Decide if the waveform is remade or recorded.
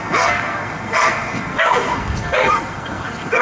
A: remade